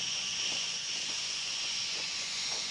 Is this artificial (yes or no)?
yes